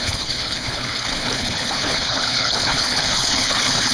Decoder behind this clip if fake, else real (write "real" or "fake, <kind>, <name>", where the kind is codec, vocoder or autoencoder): fake, codec, HILCodec